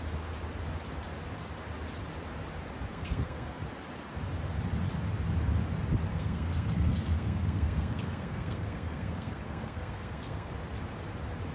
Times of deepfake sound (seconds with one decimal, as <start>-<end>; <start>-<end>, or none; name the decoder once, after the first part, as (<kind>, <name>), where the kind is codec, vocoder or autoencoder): 2.9-3.6 (codec, SNAC); 6.1-10.5